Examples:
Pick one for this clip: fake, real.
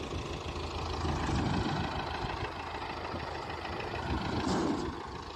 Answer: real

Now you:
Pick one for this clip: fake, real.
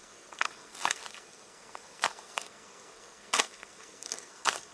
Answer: fake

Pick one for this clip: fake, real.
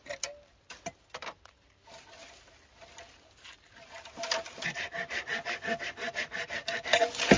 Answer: real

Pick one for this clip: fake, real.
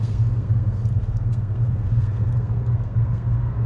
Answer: fake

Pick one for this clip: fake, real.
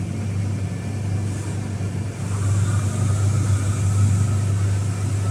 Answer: real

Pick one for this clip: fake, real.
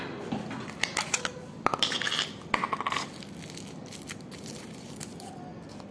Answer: real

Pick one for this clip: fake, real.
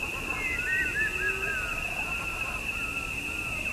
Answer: real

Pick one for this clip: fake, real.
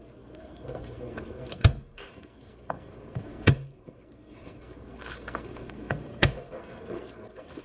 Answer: fake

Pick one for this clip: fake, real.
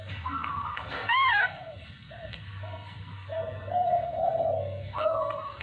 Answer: fake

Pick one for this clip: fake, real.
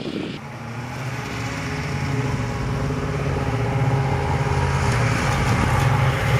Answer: real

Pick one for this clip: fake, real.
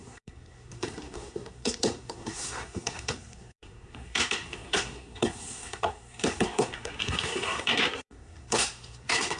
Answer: fake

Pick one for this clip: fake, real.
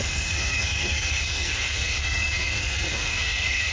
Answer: fake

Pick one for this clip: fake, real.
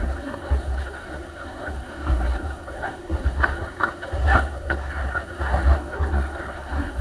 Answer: fake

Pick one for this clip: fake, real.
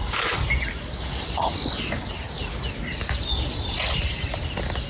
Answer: real